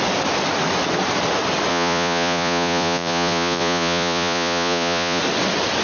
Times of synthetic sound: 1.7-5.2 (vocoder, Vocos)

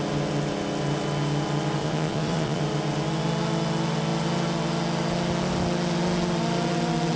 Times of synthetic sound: 1.8-2.6 (vocoder, Vocos)

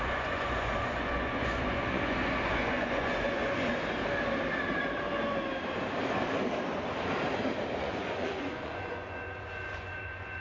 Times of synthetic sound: 0.0-3.7 (vocoder, Vocos); 7.8-10.4

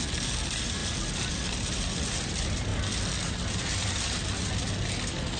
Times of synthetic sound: none

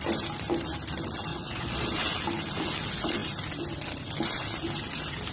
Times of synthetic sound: 1.3-2.0 (vocoder, Vocos)

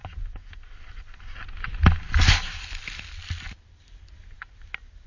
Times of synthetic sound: 0.0-0.6 (vocoder, Vocos)

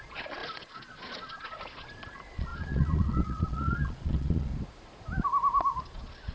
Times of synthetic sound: 0.0-4.5 (vocoder, Vocos); 5.8-6.3